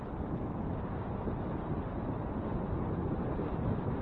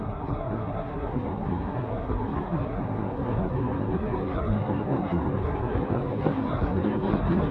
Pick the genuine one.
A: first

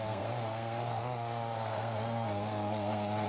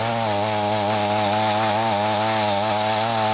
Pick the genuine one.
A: second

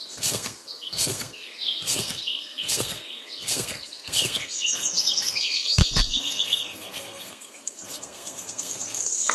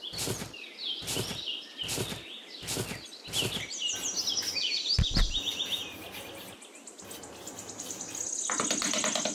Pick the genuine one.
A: second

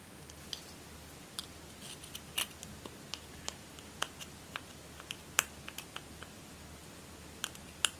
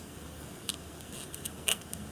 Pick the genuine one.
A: first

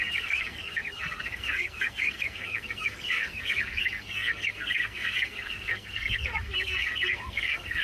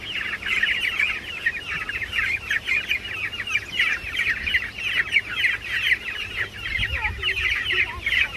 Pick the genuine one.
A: second